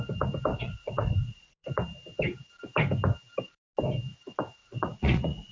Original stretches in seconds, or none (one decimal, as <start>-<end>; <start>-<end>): 0.0-0.5; 1.7-4.6